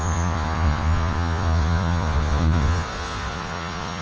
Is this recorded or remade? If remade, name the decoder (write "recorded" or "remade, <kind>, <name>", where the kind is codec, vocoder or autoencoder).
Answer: remade, vocoder, Vocos